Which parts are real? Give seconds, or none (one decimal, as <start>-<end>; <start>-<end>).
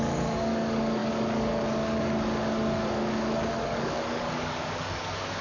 none